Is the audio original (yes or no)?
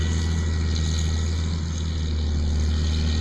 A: yes